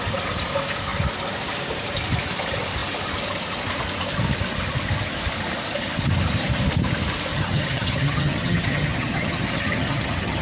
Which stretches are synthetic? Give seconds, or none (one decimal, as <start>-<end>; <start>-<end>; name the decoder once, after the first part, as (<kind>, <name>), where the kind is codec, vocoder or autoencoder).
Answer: 7.3-10.4 (vocoder, HiFi-GAN)